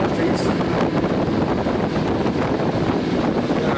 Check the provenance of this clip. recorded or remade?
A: recorded